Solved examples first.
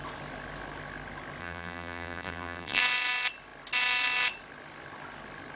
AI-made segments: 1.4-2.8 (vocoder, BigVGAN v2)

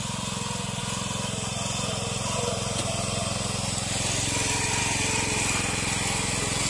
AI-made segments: none

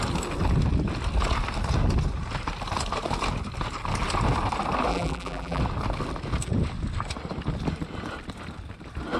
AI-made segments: 4.9-5.6 (vocoder, BigVGAN v2)

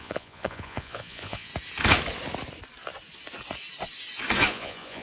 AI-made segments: 0.0-1.5 (vocoder, Vocos); 4.5-5.0